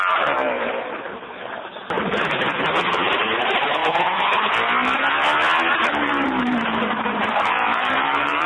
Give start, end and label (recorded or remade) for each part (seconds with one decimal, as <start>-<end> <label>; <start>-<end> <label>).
0.0-2.5 remade; 2.5-3.2 recorded; 3.2-3.8 remade; 3.8-6.0 recorded; 6.0-8.5 remade